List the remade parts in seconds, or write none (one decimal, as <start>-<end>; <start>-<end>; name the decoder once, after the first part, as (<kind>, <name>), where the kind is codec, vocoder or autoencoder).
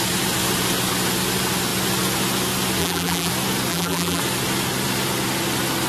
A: 2.8-3.3 (vocoder, BigVGAN v2); 3.7-4.2